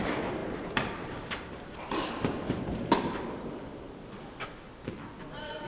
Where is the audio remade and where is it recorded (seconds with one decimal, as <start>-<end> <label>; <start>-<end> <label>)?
0.0-0.4 recorded; 0.4-3.1 remade; 3.1-5.7 recorded